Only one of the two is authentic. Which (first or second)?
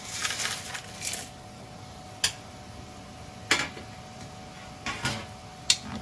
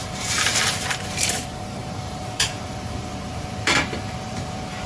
first